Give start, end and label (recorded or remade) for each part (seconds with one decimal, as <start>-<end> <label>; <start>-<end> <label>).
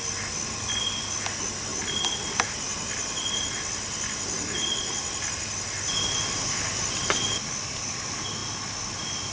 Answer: 0.0-9.3 recorded